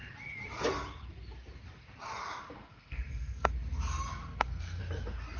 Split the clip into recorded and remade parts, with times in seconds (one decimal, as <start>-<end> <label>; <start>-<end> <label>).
0.0-2.6 recorded; 2.6-3.5 remade; 3.5-4.2 recorded; 4.2-4.8 remade; 4.8-5.4 recorded